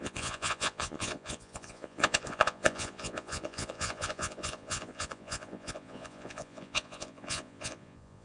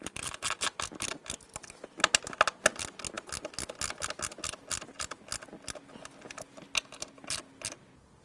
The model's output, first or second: first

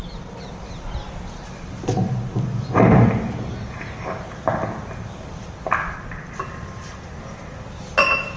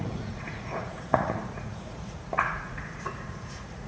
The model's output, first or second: second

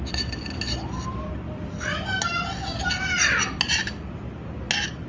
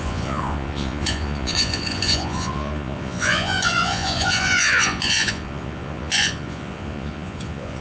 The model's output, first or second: second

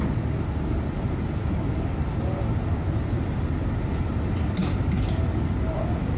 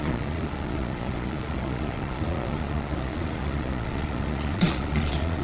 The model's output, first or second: second